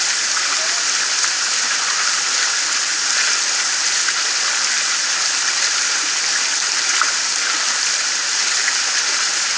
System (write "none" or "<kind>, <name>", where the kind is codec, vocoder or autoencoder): none